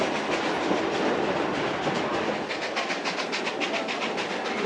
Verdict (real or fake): real